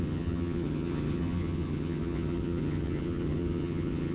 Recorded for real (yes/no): no